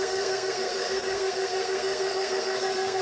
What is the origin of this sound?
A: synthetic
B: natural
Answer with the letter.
A